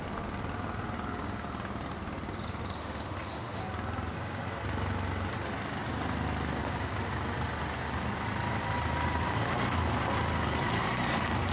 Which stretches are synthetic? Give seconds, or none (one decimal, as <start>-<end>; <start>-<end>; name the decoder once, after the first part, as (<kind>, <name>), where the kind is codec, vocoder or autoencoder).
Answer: 2.8-3.6 (autoencoder, DAC-VAE)